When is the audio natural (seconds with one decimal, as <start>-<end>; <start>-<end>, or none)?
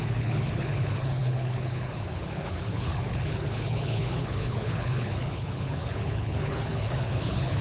none